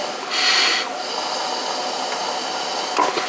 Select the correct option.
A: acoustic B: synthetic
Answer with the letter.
A